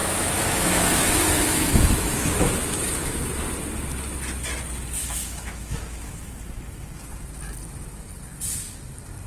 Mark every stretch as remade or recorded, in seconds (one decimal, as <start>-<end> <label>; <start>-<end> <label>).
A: 0.0-3.2 remade; 3.2-5.0 recorded; 5.0-6.3 remade; 6.3-9.3 recorded